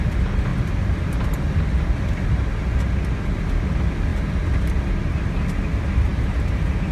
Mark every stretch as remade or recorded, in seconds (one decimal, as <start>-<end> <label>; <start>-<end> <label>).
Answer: 0.0-6.9 recorded